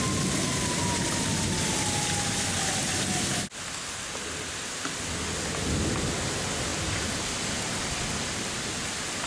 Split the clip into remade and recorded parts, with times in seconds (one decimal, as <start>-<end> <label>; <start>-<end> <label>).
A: 0.0-9.3 recorded